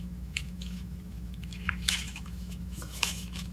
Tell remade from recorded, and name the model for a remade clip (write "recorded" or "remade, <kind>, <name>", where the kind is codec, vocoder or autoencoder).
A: remade, autoencoder, DAC-VAE